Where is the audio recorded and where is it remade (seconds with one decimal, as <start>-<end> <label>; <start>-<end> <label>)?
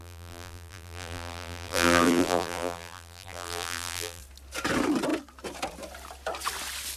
0.0-4.2 remade; 4.2-7.0 recorded